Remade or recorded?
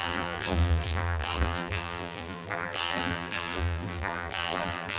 remade